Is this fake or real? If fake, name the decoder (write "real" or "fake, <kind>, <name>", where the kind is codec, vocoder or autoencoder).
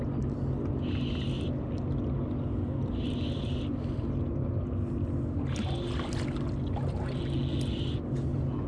real